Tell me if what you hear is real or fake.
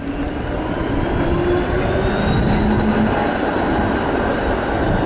real